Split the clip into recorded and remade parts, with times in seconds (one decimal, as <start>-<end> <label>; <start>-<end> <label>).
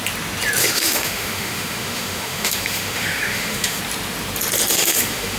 0.0-0.6 recorded; 0.6-3.8 remade; 3.8-4.7 recorded; 4.7-5.4 remade